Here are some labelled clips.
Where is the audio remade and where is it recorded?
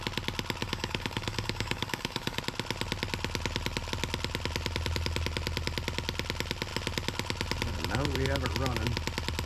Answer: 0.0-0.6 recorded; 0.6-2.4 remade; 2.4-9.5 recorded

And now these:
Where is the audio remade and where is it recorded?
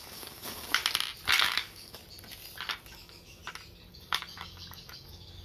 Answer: 0.0-0.8 remade; 0.8-1.4 recorded; 1.4-2.0 remade; 2.0-2.9 recorded; 2.9-3.4 remade; 3.4-3.9 recorded; 3.9-5.4 remade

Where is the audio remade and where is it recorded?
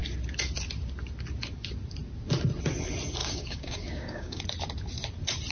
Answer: 0.0-3.2 recorded; 3.2-4.4 remade; 4.4-5.5 recorded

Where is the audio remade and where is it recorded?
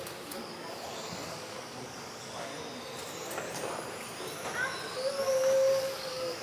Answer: 0.0-2.5 remade; 2.5-5.1 recorded; 5.1-6.4 remade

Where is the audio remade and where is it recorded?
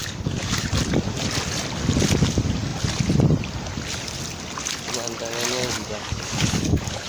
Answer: 0.0-0.6 remade; 0.6-5.8 recorded; 5.8-7.1 remade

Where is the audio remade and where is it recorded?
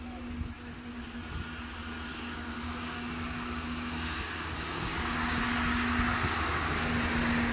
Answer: 0.0-2.1 recorded; 2.1-5.4 remade; 5.4-7.5 recorded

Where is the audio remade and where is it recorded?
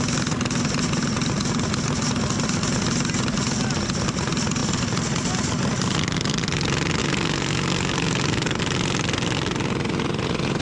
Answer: 0.0-7.0 recorded; 7.0-8.6 remade; 8.6-10.6 recorded